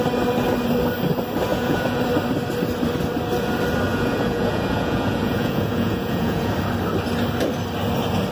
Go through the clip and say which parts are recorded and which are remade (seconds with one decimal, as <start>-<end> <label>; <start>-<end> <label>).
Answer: 0.0-1.5 recorded; 1.5-2.0 remade; 2.0-3.9 recorded; 3.9-6.5 remade; 6.5-8.3 recorded